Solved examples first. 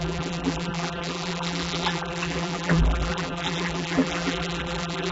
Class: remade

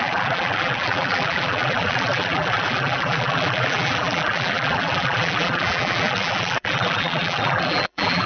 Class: remade